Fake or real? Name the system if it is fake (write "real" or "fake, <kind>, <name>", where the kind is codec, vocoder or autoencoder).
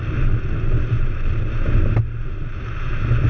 real